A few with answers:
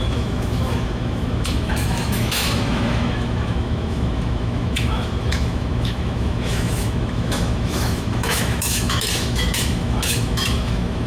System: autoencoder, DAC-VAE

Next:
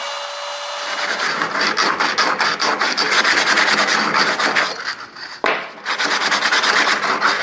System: none